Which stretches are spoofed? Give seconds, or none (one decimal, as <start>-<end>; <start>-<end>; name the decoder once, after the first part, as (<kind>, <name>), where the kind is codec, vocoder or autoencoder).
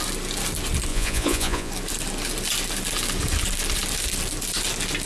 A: 0.9-1.7 (vocoder, Vocos)